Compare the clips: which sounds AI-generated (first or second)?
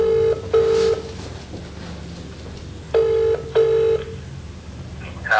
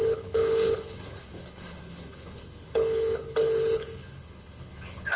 second